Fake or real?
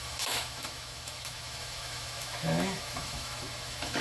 fake